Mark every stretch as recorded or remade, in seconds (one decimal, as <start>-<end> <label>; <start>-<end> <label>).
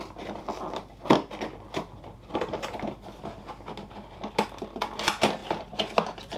0.0-6.4 recorded